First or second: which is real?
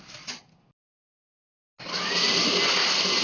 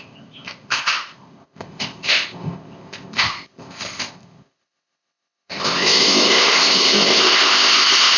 first